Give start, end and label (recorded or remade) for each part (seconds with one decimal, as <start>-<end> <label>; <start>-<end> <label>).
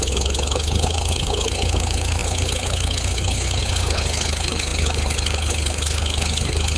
0.0-6.8 remade